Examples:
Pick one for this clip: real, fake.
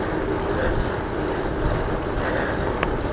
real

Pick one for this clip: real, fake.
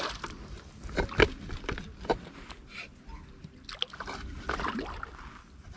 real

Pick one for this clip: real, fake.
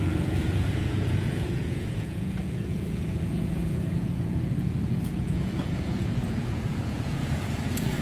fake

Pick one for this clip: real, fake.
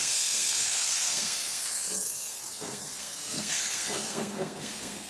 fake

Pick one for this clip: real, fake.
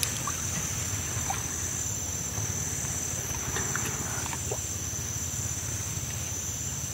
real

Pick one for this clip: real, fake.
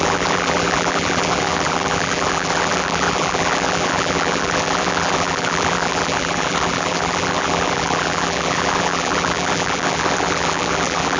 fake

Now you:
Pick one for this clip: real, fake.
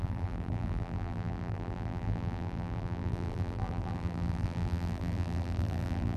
fake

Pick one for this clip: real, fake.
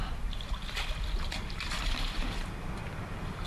fake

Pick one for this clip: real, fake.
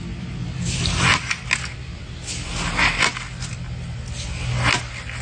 real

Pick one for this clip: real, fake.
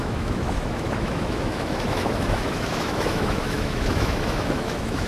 fake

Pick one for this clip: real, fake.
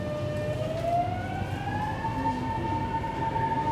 real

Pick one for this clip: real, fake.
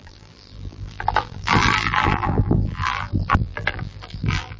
fake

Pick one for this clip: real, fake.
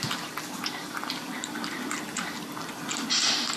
real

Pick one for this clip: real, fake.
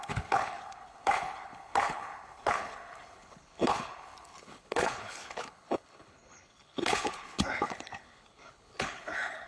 fake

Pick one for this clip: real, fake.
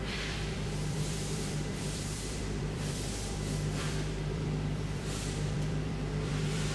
fake